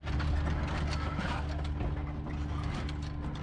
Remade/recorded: recorded